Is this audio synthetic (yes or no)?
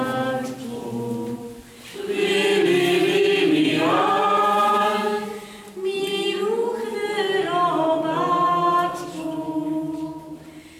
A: no